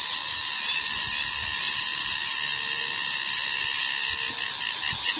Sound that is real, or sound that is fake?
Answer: real